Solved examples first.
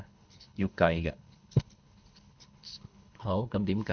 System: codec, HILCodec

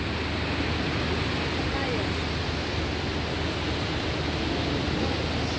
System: none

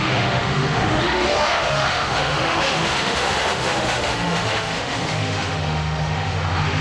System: autoencoder, DAC-VAE